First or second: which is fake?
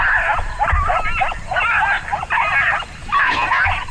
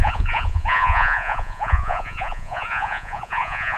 second